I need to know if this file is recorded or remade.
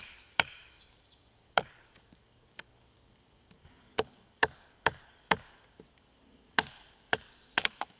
remade